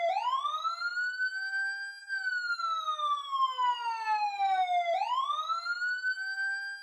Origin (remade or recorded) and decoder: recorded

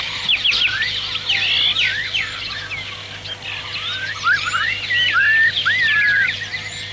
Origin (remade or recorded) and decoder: recorded